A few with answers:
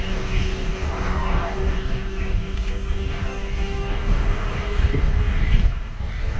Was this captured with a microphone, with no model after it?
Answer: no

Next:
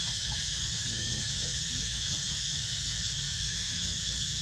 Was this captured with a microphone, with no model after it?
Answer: no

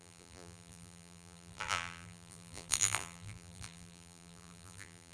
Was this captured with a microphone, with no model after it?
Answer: no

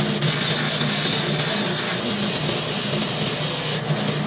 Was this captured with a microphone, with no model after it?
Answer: yes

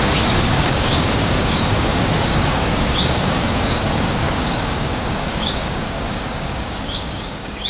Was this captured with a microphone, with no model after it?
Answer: no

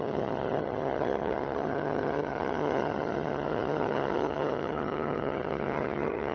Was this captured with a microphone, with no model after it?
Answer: no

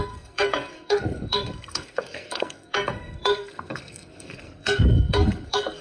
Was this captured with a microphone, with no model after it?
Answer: no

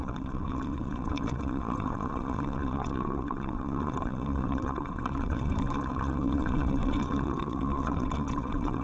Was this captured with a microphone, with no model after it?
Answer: no